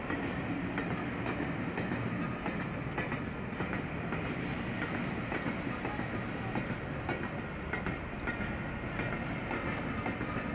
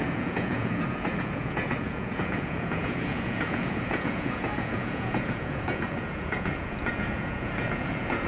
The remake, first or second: second